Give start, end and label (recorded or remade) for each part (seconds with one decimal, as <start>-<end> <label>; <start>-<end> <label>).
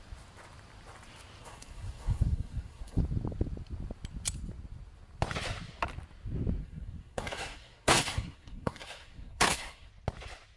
0.0-1.4 recorded; 1.4-3.0 remade; 3.0-6.6 recorded; 6.6-9.9 remade; 9.9-10.6 recorded